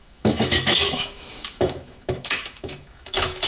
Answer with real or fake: fake